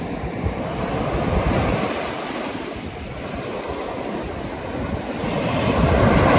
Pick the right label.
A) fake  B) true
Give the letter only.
B